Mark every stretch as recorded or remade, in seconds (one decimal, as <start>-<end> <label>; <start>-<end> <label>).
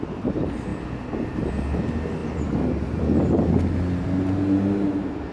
0.0-0.7 recorded; 0.7-1.4 remade; 1.4-2.2 recorded; 2.2-3.5 remade; 3.5-5.3 recorded